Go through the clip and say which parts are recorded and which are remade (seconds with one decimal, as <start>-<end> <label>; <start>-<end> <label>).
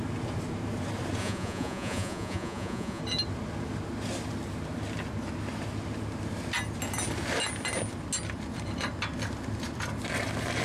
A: 0.0-1.2 recorded; 1.2-3.0 remade; 3.0-10.6 recorded